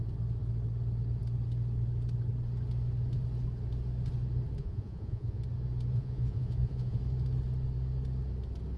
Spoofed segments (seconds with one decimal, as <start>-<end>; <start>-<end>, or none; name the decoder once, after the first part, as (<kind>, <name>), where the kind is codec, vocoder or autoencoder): 4.6-5.4 (vocoder, Vocos); 5.9-7.0